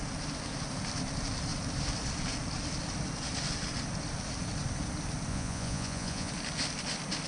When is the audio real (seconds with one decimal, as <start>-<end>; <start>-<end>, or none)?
0.0-5.3; 6.3-7.3